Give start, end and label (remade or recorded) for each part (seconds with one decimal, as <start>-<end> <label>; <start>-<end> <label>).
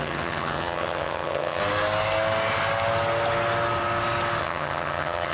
0.0-1.6 remade; 1.6-4.4 recorded; 4.4-5.3 remade